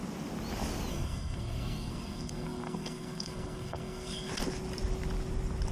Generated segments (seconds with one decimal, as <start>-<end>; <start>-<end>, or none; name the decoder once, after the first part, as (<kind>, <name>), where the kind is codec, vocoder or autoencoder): 0.9-4.3 (codec, SNAC)